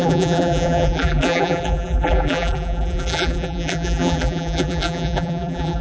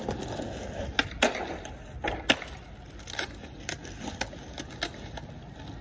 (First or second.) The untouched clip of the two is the second